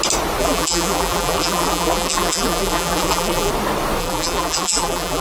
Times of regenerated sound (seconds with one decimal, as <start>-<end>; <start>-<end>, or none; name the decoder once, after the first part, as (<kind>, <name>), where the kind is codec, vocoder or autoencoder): 0.4-3.5 (vocoder, BigVGAN v2); 4.0-5.2